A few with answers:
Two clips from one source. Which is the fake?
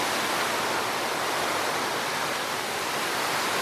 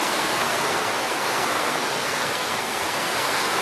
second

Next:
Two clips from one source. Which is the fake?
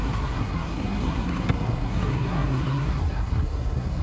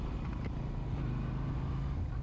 first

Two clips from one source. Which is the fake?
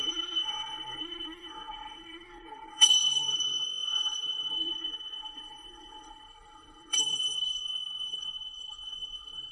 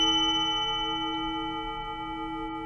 first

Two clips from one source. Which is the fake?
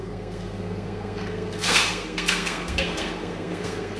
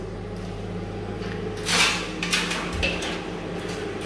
first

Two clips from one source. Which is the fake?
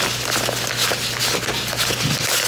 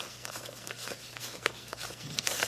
second